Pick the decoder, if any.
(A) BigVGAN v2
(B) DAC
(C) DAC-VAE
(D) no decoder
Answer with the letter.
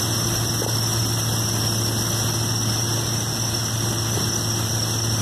D